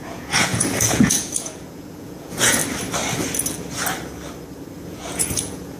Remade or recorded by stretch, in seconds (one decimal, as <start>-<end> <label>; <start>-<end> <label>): 0.0-2.6 remade; 2.6-4.9 recorded; 4.9-5.8 remade